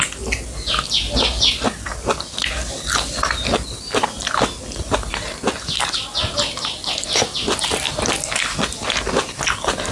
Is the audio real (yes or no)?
yes